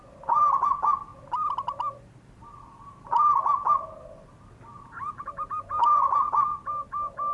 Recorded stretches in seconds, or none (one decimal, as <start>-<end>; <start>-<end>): 0.0-7.3